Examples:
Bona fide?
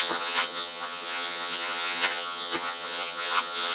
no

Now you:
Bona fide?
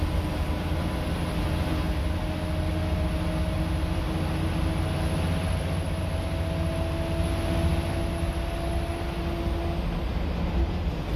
yes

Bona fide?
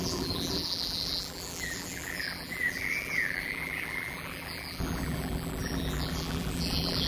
no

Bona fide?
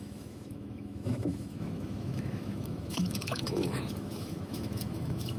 no